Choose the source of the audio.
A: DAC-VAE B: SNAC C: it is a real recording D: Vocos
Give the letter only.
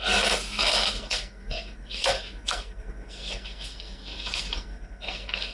B